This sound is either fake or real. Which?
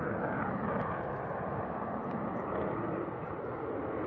real